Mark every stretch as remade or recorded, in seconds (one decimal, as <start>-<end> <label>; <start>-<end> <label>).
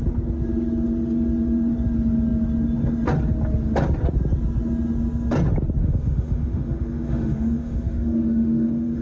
0.0-5.8 recorded; 5.8-9.0 remade